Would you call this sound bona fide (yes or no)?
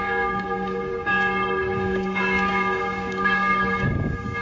no